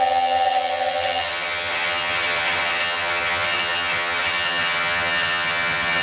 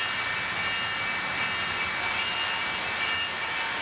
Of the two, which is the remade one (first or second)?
first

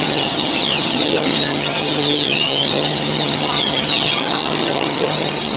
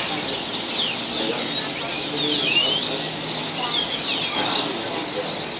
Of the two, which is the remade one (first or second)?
first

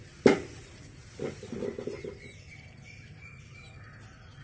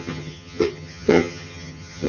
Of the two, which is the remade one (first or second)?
second